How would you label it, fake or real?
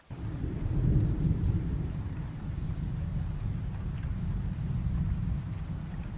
fake